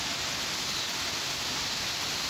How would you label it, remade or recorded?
recorded